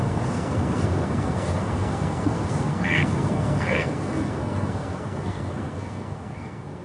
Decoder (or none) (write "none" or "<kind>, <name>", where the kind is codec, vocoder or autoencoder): codec, SNAC